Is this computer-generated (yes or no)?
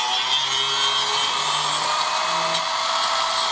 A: no